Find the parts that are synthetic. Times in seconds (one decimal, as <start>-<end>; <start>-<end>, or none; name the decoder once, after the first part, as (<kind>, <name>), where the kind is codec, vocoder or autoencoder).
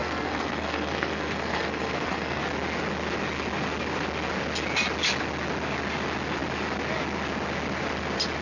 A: 0.0-2.4 (codec, SNAC)